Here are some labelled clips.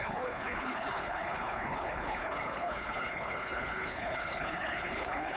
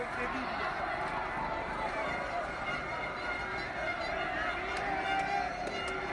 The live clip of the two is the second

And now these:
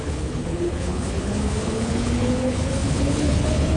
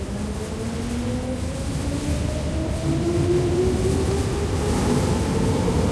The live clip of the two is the second